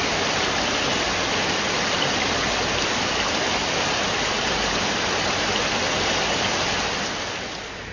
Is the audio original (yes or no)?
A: yes